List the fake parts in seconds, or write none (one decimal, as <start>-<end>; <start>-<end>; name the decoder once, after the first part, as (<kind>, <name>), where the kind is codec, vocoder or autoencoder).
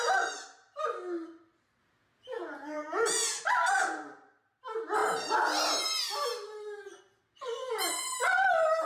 1.8-3.4 (vocoder, Vocos)